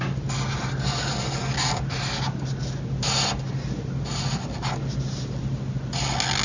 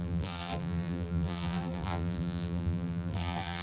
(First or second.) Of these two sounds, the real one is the first